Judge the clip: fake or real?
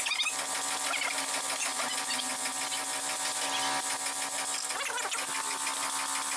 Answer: real